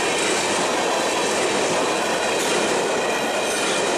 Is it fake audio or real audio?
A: real